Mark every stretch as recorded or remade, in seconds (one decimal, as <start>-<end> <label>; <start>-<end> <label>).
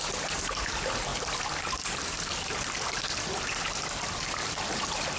0.0-1.1 remade; 1.1-4.2 recorded; 4.2-5.2 remade